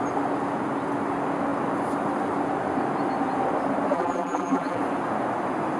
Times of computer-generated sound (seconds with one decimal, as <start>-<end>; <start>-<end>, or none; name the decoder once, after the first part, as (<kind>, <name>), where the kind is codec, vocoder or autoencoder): 3.9-4.8 (vocoder, BigVGAN v2)